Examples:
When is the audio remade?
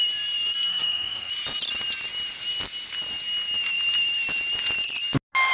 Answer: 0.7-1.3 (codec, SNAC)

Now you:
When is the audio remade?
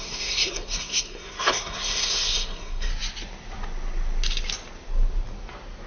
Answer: 0.0-2.9 (codec, SNAC)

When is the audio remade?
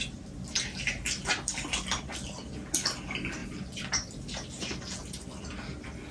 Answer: none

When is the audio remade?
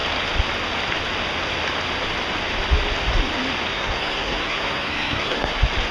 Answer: 3.7-5.5 (codec, SNAC)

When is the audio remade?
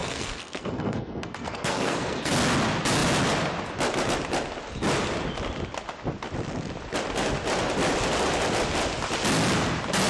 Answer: 0.0-2.3 (codec, SNAC)